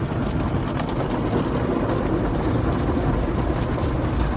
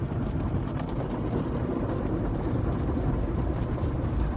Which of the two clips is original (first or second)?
first